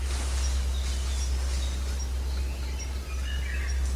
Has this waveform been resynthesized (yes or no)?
no